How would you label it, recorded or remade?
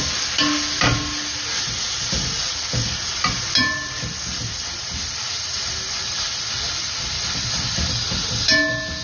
recorded